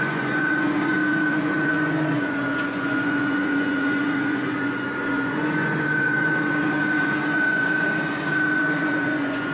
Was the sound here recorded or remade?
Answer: remade